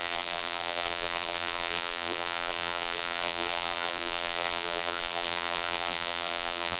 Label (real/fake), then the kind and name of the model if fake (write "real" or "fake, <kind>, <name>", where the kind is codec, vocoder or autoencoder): fake, vocoder, BigVGAN v2